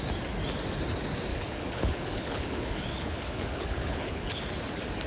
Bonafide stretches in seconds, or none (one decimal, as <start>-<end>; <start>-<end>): 0.0-1.3; 4.4-5.1